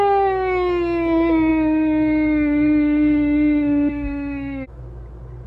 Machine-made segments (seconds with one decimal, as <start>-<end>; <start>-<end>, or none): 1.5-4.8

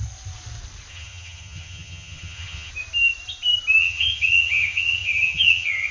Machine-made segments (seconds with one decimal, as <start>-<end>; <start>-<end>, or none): 0.9-2.7; 3.8-5.9

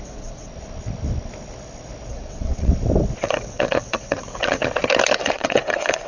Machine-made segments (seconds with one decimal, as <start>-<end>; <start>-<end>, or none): 0.0-0.5; 2.1-2.7; 3.2-4.6; 5.2-6.1